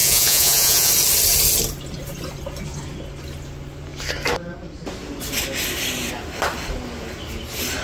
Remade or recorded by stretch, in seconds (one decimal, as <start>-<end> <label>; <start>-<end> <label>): 0.0-0.9 remade; 0.9-7.8 recorded